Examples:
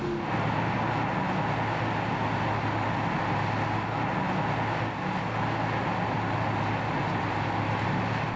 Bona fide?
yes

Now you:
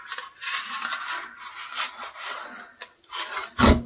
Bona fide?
yes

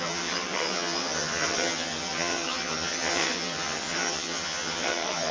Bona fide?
no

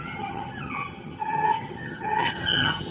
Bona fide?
no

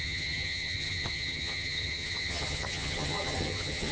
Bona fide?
no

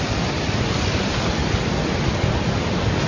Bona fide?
yes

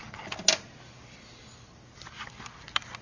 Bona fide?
yes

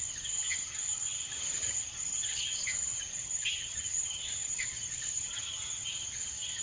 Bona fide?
no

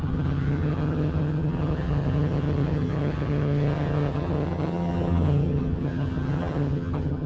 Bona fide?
no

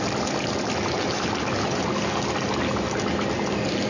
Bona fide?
yes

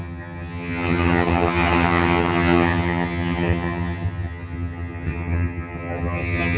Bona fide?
no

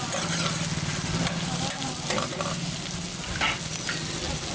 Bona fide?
yes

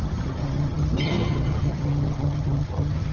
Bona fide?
no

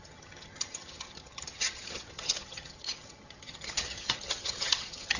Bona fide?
no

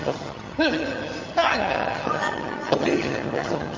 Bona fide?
no